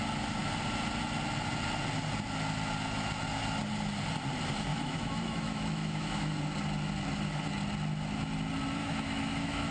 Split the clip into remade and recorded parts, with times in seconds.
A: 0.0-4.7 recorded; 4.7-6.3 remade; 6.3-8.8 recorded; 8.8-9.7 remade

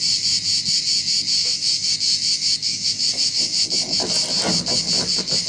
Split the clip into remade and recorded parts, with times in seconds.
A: 0.0-1.4 recorded; 1.4-1.9 remade; 1.9-2.6 recorded; 2.6-3.4 remade; 3.4-5.5 recorded

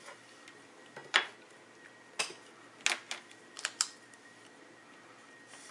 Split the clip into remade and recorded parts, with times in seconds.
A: 0.0-5.7 recorded

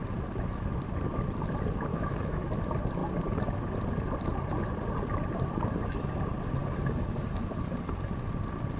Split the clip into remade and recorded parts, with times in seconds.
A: 0.0-1.9 recorded; 1.9-2.5 remade; 2.5-8.8 recorded

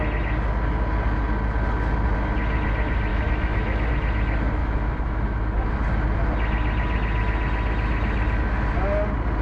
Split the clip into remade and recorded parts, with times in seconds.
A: 0.0-3.1 recorded; 3.1-3.9 remade; 3.9-4.6 recorded; 4.6-5.7 remade; 5.7-9.4 recorded